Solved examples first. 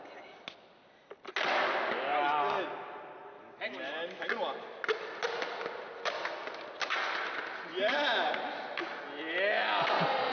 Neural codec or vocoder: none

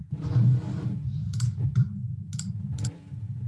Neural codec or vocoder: none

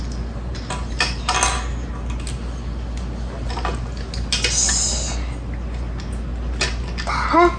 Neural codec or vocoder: none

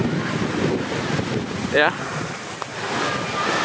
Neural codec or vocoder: none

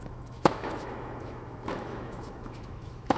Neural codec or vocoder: autoencoder, DAC-VAE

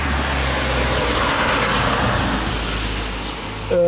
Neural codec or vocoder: none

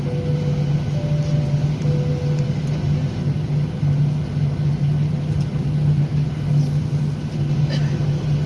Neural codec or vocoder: none